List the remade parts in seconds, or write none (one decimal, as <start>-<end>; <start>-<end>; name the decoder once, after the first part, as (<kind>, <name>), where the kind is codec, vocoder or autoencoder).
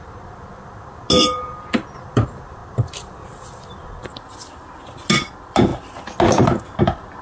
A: none